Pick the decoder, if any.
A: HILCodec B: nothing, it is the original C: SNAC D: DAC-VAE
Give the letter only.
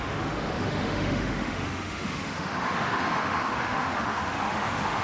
D